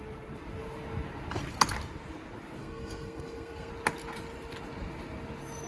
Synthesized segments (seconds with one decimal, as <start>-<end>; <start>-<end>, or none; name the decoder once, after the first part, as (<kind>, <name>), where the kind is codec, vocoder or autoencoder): 2.6-3.7 (codec, SNAC)